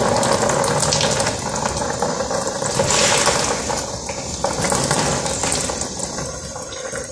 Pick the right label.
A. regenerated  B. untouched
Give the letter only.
B